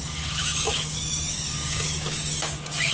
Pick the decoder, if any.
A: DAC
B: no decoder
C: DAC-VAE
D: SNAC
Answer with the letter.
A